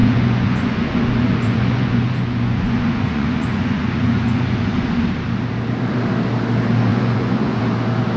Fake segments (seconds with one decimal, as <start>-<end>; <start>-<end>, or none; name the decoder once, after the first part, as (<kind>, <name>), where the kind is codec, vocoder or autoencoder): 0.0-4.9 (vocoder, Vocos); 6.9-7.6